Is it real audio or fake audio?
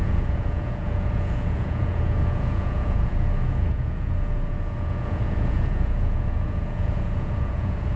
fake